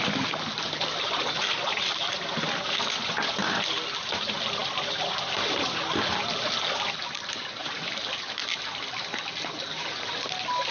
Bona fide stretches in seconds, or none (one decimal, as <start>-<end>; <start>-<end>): 0.0-10.7